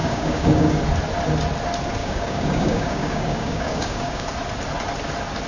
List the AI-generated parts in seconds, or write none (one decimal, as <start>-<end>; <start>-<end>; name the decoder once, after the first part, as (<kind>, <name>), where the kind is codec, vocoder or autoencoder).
0.0-0.8 (codec, DAC); 2.0-4.3